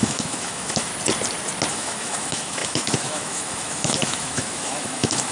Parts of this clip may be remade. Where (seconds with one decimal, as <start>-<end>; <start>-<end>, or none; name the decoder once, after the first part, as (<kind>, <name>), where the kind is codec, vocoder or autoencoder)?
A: 0.0-0.9 (autoencoder, DAC-VAE); 1.7-5.3